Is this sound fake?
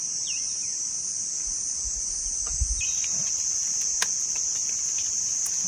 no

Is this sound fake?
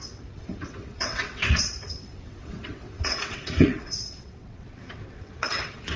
yes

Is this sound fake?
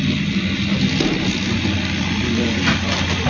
no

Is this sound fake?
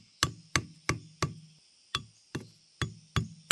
no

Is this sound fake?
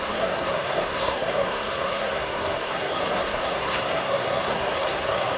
yes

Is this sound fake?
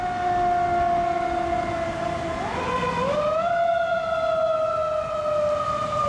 no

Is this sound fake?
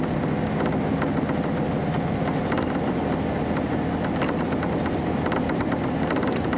no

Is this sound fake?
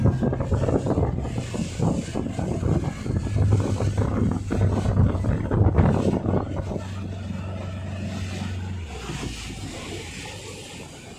no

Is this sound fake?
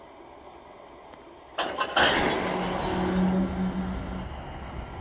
no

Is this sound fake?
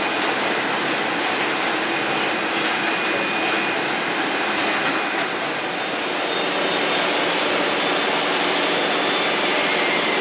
no